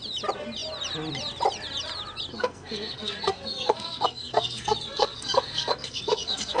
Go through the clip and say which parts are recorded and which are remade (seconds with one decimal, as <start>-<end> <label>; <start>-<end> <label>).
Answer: 0.0-2.3 recorded; 2.3-6.6 remade